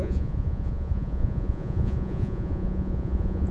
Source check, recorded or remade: remade